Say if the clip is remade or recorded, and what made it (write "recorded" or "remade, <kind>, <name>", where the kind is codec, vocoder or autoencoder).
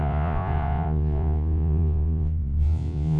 remade, vocoder, Vocos